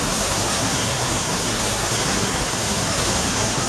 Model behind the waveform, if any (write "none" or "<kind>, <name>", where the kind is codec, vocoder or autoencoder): codec, SNAC